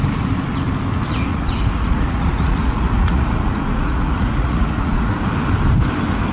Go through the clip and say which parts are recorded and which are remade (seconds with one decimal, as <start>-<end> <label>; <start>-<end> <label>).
0.0-1.3 recorded; 1.3-5.1 remade; 5.1-6.3 recorded